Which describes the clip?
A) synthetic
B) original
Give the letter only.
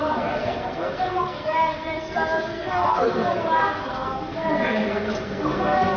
A